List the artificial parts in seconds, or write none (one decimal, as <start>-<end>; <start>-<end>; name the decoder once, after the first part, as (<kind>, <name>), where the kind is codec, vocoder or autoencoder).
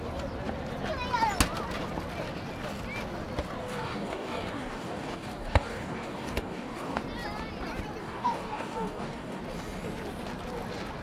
3.6-7.0 (codec, DAC); 8.0-9.4